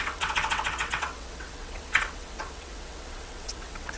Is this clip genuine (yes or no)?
no